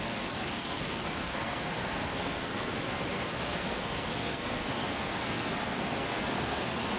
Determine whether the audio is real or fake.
fake